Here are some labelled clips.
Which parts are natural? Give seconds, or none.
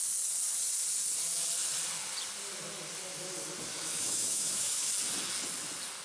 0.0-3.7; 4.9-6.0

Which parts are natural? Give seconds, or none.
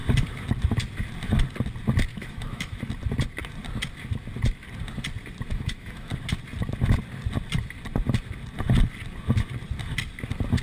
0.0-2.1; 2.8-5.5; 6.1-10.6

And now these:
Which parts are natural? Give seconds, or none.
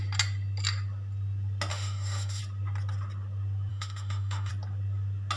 0.0-1.7; 2.4-3.7; 4.5-5.4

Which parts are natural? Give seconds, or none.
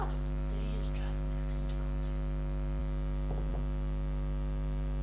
0.0-5.0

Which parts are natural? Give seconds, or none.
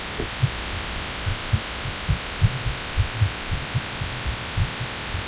0.0-5.3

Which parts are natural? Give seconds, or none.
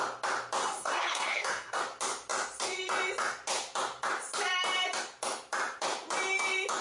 0.0-0.6; 1.8-6.8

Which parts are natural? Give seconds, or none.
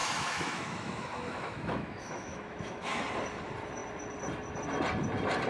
3.0-5.5